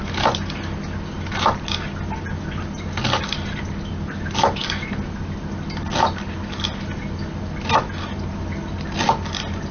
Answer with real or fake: real